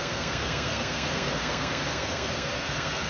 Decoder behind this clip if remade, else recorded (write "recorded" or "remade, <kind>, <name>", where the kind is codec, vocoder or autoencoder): remade, codec, SNAC